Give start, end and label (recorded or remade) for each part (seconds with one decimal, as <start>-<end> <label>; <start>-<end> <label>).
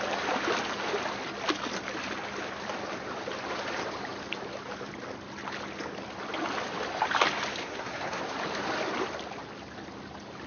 0.0-7.6 recorded; 7.6-8.2 remade; 8.2-10.5 recorded